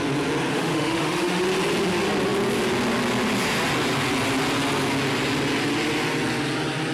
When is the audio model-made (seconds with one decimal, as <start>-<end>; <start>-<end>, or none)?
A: 0.5-1.4